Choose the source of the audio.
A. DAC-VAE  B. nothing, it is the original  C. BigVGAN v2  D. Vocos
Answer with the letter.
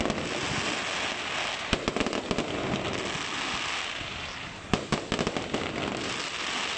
B